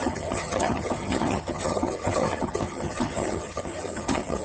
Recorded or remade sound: remade